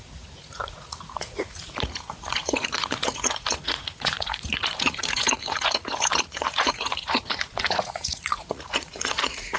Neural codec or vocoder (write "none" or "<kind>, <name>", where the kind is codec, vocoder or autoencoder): vocoder, Vocos